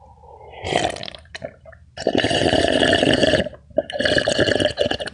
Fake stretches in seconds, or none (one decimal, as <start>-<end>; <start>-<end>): 1.0-2.7; 3.2-4.0